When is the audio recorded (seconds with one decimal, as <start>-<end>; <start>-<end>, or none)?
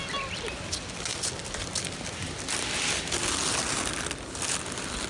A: 0.0-5.1